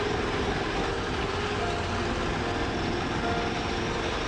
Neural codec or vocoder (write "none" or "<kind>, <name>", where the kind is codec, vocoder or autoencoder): none